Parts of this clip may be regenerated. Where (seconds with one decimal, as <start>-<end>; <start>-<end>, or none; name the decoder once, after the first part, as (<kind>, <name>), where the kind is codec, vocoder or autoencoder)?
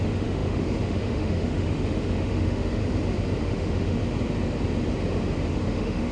0.0-2.8 (autoencoder, DAC-VAE); 3.4-4.0; 5.5-6.1